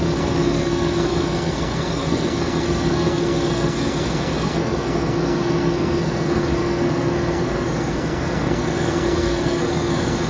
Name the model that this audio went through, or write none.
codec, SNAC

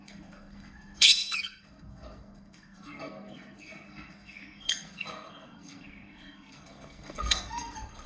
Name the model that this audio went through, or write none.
codec, SNAC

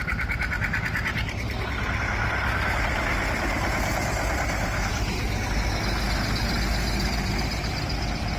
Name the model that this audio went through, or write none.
none